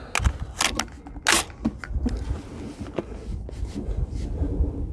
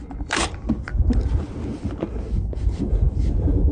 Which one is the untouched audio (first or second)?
first